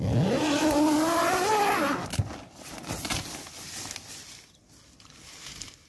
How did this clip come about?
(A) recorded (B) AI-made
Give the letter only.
A